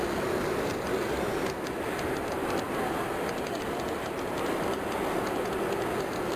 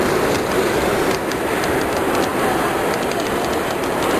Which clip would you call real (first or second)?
first